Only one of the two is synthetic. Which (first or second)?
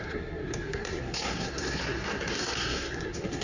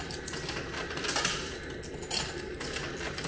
first